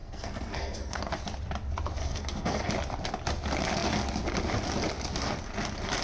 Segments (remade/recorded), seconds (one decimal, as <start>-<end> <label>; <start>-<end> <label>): 0.0-1.0 remade; 1.0-2.0 recorded; 2.0-2.7 remade; 2.7-6.0 recorded